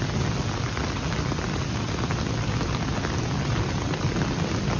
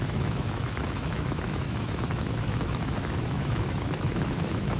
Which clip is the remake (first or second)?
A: second